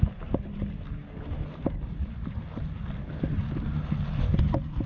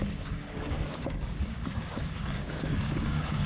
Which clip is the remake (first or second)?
second